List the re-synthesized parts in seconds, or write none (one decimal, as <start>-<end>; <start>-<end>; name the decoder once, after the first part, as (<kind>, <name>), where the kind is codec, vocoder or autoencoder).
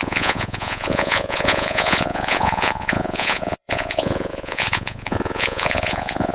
0.0-6.3 (vocoder, Vocos)